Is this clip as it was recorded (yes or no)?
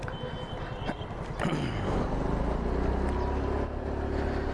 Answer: yes